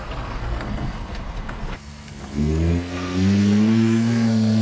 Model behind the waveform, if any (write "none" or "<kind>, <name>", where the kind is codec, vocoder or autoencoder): codec, SNAC